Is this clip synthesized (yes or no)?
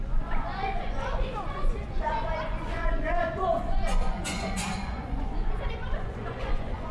yes